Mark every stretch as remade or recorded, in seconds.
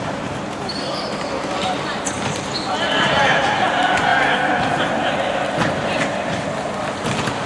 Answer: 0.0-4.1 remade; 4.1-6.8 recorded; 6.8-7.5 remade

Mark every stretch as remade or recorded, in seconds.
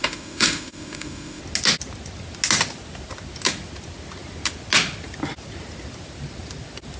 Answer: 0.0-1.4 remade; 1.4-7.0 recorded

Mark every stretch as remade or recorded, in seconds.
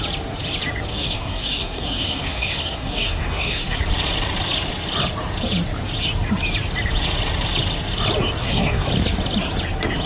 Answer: 0.0-0.9 recorded; 0.9-3.8 remade; 3.8-8.4 recorded; 8.4-8.9 remade; 8.9-10.1 recorded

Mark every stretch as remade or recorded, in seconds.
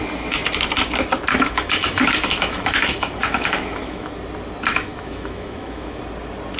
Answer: 0.0-1.3 recorded; 1.3-4.1 remade; 4.1-4.7 recorded; 4.7-6.0 remade; 6.0-6.6 recorded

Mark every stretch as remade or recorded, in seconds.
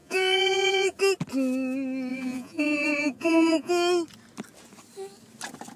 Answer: 0.0-1.0 remade; 1.0-2.1 recorded; 2.1-3.7 remade; 3.7-5.8 recorded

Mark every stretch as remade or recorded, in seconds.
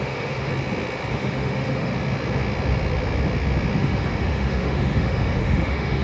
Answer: 0.0-0.5 remade; 0.5-1.1 recorded; 1.1-1.9 remade; 1.9-3.8 recorded; 3.8-6.0 remade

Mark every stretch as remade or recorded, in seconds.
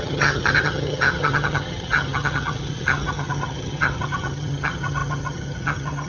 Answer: 0.0-6.1 remade